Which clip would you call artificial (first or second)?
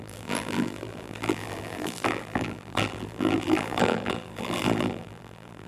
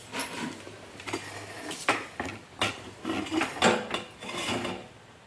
first